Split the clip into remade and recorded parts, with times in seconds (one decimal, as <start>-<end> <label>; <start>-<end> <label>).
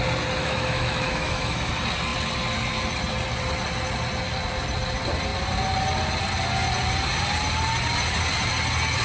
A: 0.0-0.4 recorded; 0.4-1.7 remade; 1.7-9.0 recorded